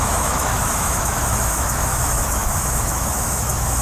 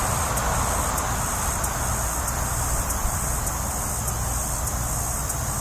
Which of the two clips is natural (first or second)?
second